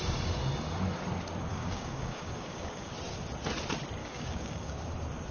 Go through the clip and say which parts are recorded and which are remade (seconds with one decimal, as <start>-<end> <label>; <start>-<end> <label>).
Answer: 0.0-1.5 recorded; 1.5-2.9 remade; 2.9-4.0 recorded; 4.0-4.7 remade; 4.7-5.3 recorded